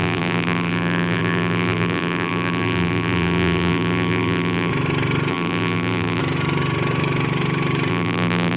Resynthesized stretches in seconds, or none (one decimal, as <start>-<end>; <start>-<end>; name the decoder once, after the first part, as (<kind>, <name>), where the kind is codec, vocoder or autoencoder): 0.0-4.7 (vocoder, BigVGAN v2); 5.3-6.2; 7.9-8.6